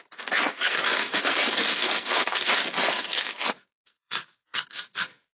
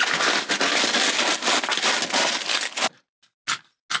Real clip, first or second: second